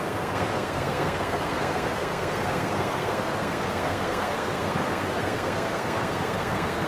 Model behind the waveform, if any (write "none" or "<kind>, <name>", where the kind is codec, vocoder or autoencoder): codec, SNAC